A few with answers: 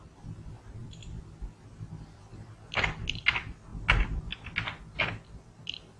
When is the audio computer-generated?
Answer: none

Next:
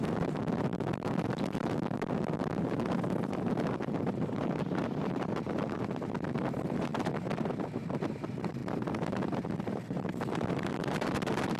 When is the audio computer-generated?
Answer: 0.0-11.6 (vocoder, BigVGAN v2)

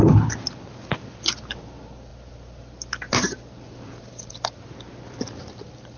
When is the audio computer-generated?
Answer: none

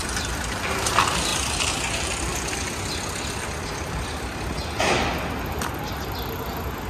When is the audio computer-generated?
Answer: none

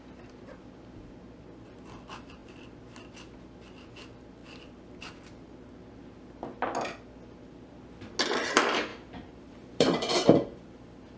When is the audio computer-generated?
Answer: 8.9-11.2 (vocoder, BigVGAN v2)